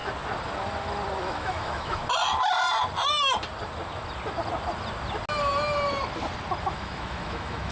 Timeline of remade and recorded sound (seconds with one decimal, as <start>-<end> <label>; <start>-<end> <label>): 0.0-1.2 recorded; 1.2-2.0 remade; 2.0-6.6 recorded; 6.6-7.7 remade